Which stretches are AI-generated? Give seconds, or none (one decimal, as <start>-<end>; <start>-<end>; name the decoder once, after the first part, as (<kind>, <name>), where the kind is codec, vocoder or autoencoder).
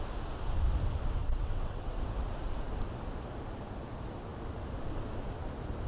1.2-2.0 (vocoder, WaveNeXt)